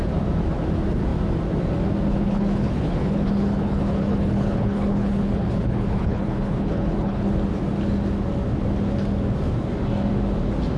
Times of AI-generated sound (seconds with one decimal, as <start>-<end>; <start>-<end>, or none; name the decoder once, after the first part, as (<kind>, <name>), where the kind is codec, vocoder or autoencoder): 2.1-7.3 (codec, HILCodec)